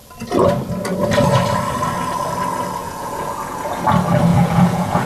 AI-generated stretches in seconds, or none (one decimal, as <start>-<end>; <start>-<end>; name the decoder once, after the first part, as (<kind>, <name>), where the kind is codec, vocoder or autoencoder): 2.8-3.8 (vocoder, Vocos); 4.3-5.1